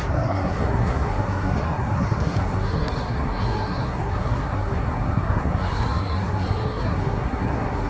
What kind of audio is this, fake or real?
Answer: fake